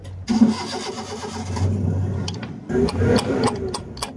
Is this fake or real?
real